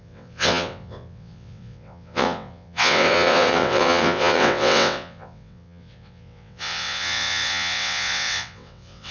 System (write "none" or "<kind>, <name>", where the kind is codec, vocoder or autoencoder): vocoder, WaveNeXt